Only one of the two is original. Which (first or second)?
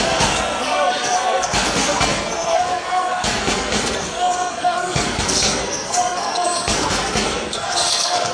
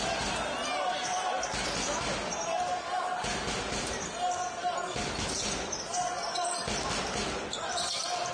second